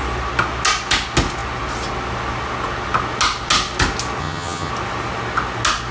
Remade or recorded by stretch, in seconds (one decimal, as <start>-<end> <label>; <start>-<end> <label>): 0.0-4.2 recorded; 4.2-4.7 remade; 4.7-5.9 recorded